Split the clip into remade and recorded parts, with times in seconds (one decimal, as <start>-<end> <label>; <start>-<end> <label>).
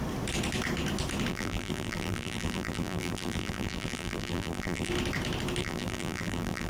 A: 0.0-1.3 recorded; 1.3-4.9 remade; 4.9-5.6 recorded; 5.6-6.7 remade